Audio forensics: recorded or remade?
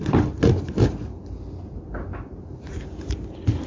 recorded